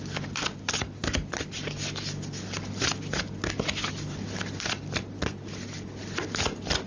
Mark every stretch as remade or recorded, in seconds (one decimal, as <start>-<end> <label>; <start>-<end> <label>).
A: 0.0-6.9 recorded